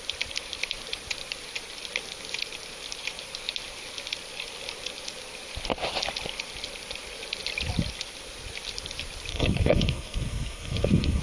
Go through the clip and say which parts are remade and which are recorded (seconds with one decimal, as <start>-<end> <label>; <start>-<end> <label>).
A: 0.0-9.3 recorded; 9.3-11.2 remade